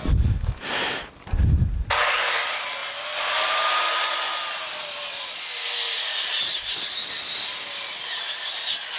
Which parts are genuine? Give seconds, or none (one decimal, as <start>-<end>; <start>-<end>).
0.0-2.8; 3.5-4.8; 8.2-9.0